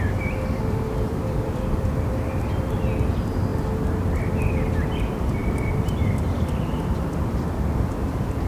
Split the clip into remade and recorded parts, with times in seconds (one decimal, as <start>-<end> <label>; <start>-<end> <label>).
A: 0.0-8.5 remade